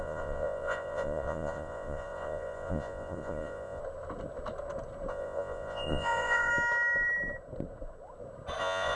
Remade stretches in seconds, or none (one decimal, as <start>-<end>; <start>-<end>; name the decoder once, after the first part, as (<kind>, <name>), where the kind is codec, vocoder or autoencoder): 0.0-3.8 (vocoder, Vocos); 5.1-6.5; 8.6-9.0